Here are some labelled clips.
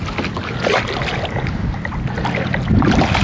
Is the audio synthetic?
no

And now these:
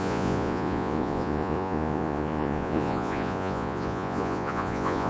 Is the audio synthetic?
yes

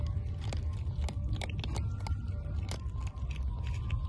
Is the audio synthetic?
no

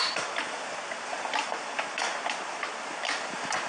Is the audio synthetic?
no